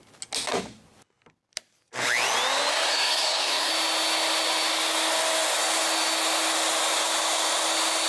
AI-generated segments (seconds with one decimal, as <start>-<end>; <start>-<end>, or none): 2.7-3.7